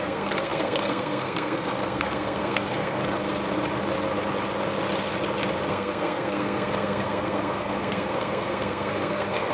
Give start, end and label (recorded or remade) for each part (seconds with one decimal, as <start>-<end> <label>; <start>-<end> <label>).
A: 0.0-3.0 remade; 3.0-5.7 recorded; 5.7-9.5 remade